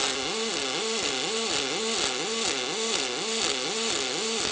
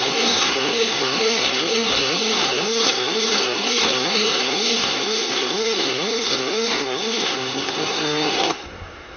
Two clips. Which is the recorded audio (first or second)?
first